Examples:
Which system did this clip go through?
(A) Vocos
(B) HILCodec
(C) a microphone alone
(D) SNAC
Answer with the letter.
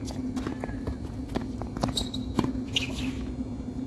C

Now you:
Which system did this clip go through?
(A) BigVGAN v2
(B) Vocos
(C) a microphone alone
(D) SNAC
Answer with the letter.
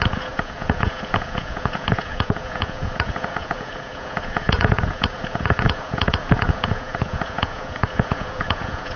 B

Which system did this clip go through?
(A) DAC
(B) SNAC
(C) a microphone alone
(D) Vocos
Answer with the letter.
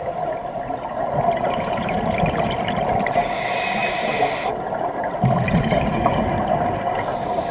C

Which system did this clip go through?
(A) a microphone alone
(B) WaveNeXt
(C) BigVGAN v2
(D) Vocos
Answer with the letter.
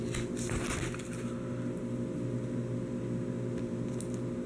A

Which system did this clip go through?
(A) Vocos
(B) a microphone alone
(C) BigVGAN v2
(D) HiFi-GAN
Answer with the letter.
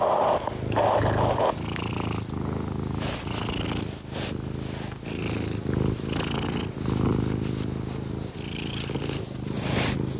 B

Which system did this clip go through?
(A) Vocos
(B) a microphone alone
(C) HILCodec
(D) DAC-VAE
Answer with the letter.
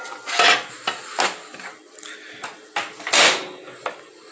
B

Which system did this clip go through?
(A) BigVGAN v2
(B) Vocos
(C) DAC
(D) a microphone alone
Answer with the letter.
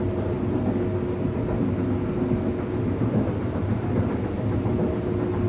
D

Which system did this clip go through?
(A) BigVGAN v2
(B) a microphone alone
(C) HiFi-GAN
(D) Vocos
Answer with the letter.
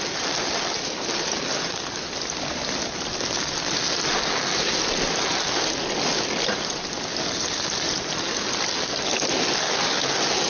B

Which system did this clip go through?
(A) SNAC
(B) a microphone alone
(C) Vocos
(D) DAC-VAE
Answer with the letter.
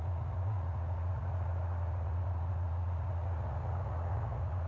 C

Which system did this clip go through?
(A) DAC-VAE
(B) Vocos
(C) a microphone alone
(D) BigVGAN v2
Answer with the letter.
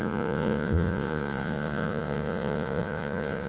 B